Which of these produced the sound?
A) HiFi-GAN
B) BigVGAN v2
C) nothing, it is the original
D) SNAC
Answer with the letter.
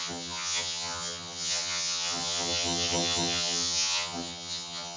A